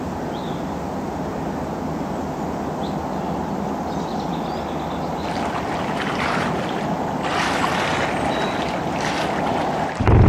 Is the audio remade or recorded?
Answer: recorded